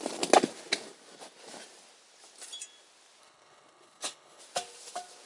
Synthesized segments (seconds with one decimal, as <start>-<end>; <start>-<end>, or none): 3.2-4.4